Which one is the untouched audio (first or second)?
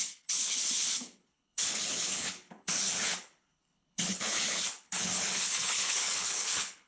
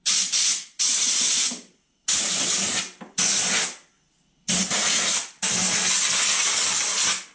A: second